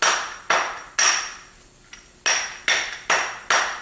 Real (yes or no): yes